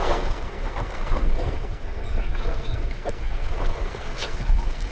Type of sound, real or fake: fake